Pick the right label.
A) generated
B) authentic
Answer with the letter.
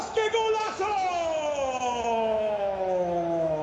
A